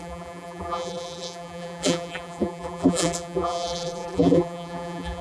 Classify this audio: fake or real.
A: fake